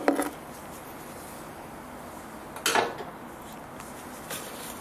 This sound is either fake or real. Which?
real